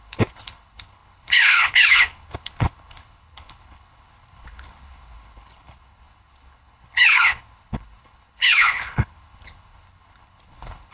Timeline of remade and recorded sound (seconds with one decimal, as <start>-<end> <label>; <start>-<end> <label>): 0.0-10.9 remade